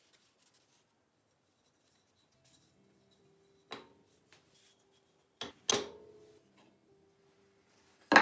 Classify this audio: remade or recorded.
recorded